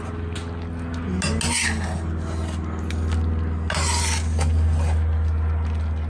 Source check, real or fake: real